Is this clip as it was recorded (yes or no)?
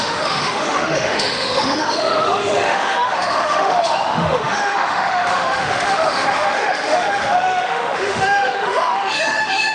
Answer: no